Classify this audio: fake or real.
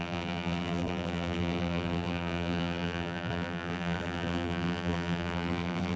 fake